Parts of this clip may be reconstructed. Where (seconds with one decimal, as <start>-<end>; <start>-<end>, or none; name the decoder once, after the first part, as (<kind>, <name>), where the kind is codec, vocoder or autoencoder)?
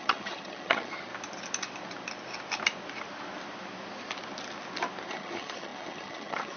0.0-1.1 (vocoder, HiFi-GAN); 5.1-6.6